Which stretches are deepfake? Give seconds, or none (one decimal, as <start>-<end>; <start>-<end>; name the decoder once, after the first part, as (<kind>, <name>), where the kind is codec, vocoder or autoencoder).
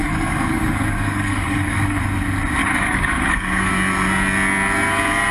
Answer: 0.0-2.0 (codec, DAC); 2.6-3.7